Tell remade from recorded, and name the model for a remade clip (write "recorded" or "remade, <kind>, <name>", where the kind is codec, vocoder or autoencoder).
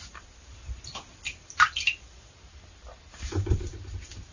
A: remade, vocoder, BigVGAN v2